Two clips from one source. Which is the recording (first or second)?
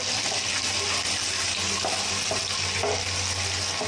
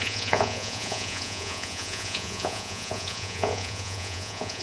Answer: first